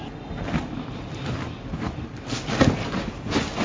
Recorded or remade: recorded